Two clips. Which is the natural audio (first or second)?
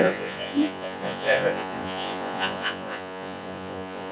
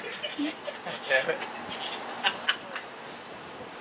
second